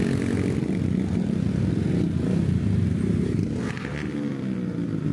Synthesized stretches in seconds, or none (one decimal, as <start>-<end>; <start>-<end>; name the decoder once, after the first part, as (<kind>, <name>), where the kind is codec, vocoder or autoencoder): none